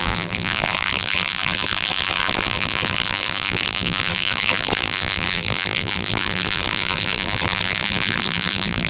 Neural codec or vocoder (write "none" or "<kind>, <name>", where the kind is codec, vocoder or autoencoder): vocoder, BigVGAN v2